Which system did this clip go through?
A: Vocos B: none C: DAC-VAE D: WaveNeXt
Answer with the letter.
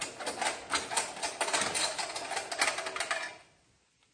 B